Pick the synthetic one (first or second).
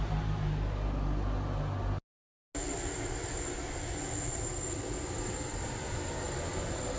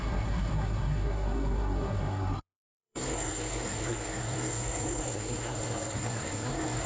second